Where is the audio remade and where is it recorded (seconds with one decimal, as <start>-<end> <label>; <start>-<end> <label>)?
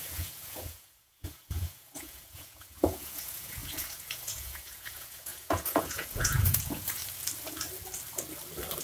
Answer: 0.0-7.0 remade; 7.0-8.8 recorded